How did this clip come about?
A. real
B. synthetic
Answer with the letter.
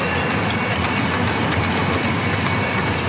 A